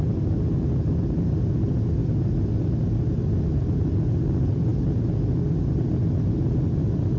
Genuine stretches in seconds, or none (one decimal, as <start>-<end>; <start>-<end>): 0.0-7.2